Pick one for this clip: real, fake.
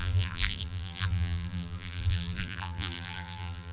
fake